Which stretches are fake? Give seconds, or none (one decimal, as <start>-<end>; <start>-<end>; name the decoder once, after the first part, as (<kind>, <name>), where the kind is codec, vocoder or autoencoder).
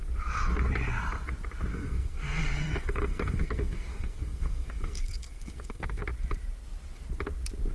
1.7-6.0 (codec, SNAC)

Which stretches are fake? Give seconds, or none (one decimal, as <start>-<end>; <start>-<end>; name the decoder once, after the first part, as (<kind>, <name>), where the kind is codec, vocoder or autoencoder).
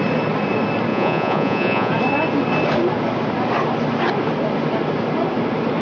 0.9-1.9 (vocoder, Vocos)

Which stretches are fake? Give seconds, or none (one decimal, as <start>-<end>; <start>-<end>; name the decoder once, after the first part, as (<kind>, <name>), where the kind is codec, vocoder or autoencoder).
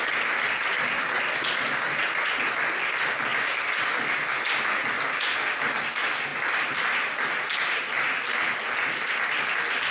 none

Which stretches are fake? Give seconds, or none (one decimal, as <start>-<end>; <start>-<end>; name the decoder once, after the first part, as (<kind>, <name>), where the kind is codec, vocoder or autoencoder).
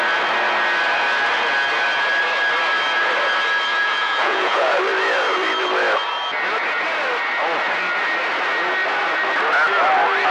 3.7-4.8 (vocoder, Vocos)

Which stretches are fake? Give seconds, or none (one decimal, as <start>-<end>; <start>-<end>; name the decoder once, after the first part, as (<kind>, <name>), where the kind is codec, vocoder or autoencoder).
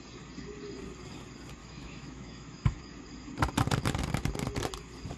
1.6-2.8 (autoencoder, DAC-VAE)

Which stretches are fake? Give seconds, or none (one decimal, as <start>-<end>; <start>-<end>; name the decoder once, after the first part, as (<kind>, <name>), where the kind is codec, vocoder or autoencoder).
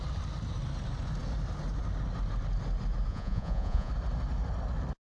3.1-3.9 (vocoder, Vocos)